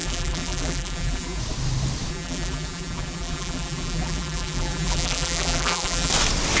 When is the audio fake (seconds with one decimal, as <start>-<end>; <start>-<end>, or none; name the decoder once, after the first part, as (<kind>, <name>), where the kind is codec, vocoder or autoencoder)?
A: 0.0-1.4 (vocoder, BigVGAN v2); 2.1-6.1